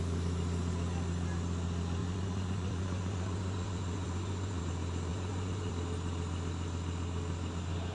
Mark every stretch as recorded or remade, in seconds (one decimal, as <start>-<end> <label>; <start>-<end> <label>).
0.0-2.0 recorded; 2.0-4.6 remade; 4.6-5.1 recorded; 5.1-5.7 remade; 5.7-7.9 recorded